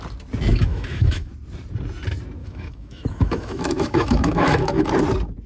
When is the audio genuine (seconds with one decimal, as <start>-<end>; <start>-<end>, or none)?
0.0-0.5; 1.3-2.4; 4.9-5.5